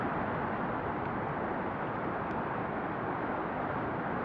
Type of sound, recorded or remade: recorded